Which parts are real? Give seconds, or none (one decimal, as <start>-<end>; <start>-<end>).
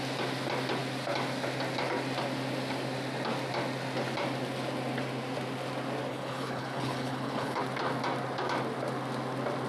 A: 0.0-6.1; 7.6-9.7